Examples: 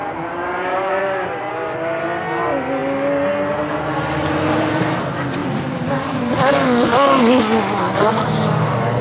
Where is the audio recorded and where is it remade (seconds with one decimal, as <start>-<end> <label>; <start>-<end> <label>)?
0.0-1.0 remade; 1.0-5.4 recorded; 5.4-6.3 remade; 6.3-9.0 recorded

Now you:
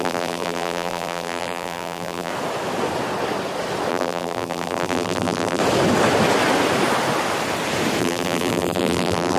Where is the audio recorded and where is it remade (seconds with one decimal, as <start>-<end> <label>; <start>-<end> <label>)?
0.0-2.3 remade; 2.3-3.9 recorded; 3.9-5.6 remade; 5.6-8.0 recorded; 8.0-9.4 remade

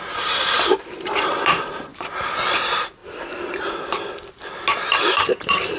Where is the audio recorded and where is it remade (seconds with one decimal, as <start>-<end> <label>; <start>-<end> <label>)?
0.0-3.0 remade; 3.0-4.3 recorded; 4.3-5.8 remade